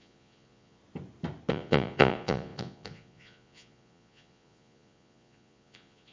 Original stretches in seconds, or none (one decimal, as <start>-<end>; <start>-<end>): 0.8-1.5